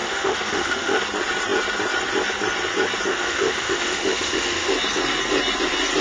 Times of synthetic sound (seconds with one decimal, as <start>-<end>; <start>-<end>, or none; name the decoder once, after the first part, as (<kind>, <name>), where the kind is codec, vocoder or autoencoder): 0.0-1.0 (autoencoder, DAC-VAE); 3.1-4.7

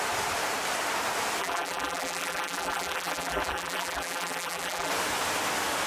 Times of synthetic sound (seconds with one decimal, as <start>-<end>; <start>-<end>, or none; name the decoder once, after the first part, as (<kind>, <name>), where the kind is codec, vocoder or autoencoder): 1.4-4.9 (vocoder, BigVGAN v2)

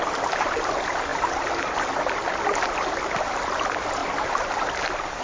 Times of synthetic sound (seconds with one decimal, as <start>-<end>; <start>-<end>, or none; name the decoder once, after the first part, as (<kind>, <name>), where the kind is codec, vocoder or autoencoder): none

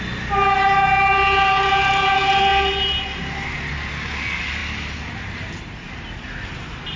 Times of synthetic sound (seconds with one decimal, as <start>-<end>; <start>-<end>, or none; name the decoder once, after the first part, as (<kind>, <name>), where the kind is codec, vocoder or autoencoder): none

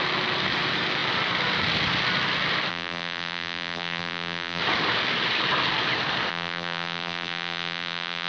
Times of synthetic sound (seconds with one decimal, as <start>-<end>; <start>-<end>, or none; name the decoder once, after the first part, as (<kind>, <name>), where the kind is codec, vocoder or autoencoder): 2.7-4.6 (vocoder, BigVGAN v2); 6.3-8.3

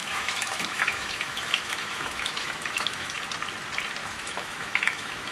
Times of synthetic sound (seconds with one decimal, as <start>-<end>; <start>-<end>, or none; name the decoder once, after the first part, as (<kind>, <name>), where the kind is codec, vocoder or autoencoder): 0.0-3.2 (autoencoder, DAC-VAE); 4.0-5.3

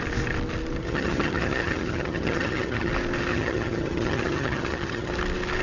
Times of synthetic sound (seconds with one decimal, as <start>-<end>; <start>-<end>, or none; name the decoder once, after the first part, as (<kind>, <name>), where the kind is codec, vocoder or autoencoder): 0.8-2.9 (vocoder, HiFi-GAN); 3.3-5.1

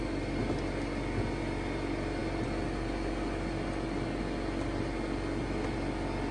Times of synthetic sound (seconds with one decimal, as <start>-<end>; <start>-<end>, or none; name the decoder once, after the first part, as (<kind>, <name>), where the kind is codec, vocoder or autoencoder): none